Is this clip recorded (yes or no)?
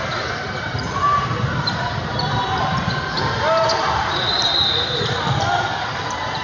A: no